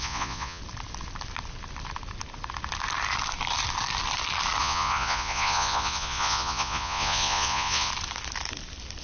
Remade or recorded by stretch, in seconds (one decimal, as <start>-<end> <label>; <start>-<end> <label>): 0.0-0.6 remade; 0.6-4.6 recorded; 4.6-7.9 remade; 7.9-9.0 recorded